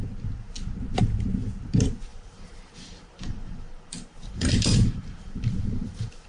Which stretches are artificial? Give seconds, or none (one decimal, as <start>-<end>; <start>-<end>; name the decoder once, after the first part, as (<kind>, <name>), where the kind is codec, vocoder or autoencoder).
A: 2.1-6.3 (vocoder, BigVGAN v2)